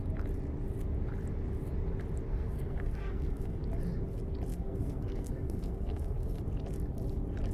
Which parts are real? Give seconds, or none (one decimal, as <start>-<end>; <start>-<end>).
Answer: 0.0-2.3; 3.6-4.5; 6.4-7.5